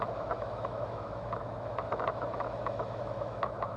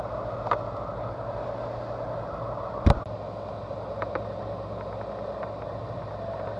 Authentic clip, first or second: second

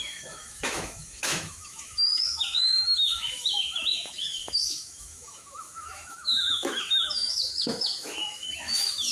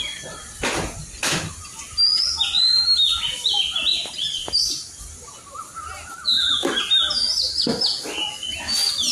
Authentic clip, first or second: second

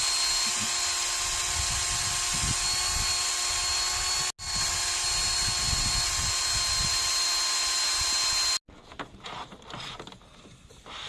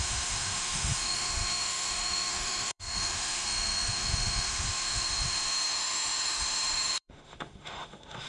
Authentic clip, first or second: first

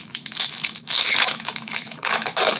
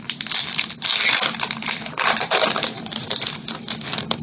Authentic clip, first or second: second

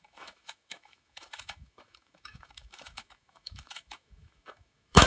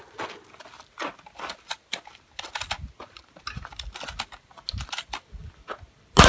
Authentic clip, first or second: second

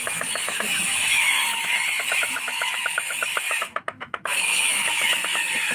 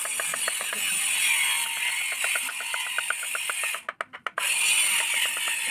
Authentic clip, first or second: second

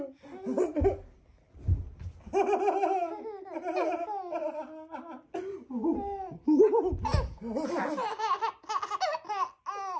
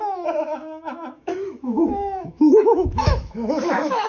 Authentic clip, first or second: first